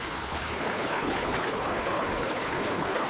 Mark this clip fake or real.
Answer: fake